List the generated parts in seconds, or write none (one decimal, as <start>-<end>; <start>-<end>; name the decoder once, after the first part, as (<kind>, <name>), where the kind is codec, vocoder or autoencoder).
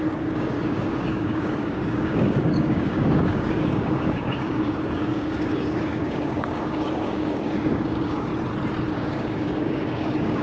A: 0.0-8.3 (codec, DAC); 8.9-10.4